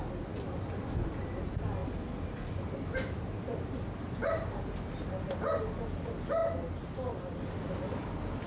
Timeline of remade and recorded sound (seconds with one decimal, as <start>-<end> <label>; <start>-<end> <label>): 0.0-8.5 recorded